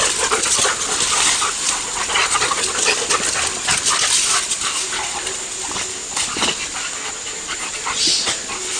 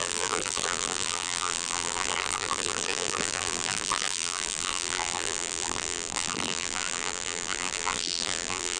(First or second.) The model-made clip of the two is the second